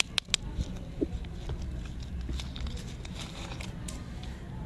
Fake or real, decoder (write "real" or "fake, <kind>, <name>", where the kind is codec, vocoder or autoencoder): real